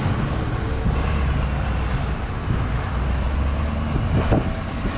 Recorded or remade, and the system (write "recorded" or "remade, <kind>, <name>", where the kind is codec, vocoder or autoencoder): recorded